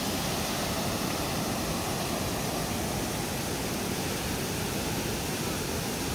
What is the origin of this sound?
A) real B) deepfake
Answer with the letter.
A